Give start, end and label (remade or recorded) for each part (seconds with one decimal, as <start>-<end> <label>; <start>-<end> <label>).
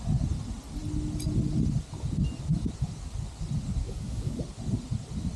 0.0-3.8 recorded; 3.8-4.4 remade; 4.4-5.4 recorded